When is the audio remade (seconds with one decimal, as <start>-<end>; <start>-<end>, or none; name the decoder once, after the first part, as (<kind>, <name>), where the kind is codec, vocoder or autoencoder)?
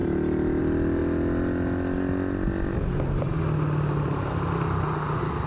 none